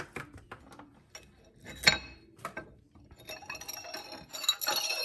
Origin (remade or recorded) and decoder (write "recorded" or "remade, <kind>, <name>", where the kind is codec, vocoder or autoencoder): recorded